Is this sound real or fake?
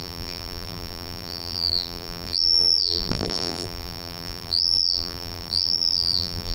fake